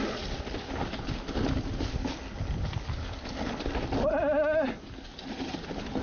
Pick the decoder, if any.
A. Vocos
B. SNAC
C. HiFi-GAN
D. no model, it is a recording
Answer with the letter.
D